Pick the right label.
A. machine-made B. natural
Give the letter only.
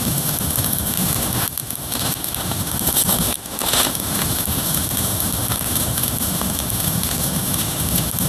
A